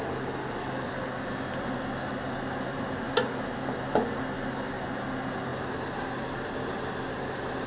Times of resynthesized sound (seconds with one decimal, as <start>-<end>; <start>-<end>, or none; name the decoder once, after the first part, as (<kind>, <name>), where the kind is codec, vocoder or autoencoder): none